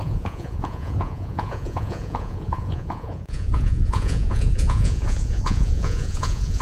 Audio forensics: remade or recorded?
remade